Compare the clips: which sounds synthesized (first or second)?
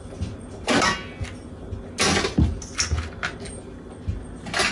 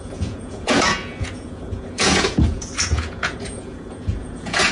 second